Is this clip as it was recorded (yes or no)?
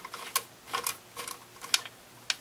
yes